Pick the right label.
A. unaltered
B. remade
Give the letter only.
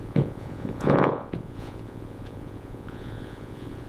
B